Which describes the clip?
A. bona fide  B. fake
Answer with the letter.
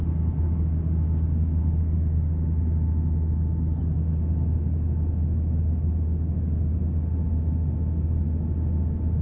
A